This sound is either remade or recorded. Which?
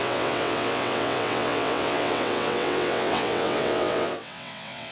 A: remade